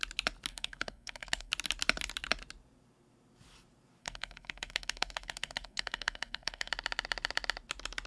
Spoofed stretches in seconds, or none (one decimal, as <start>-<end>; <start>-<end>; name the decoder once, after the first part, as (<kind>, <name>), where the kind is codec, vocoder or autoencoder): 0.5-1.5 (codec, SNAC); 4.0-6.7